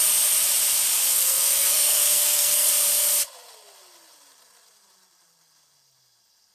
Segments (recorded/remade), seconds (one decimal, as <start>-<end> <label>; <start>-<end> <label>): 0.0-1.1 recorded; 1.1-2.7 remade; 2.7-6.5 recorded